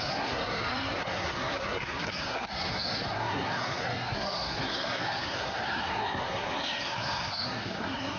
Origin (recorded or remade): remade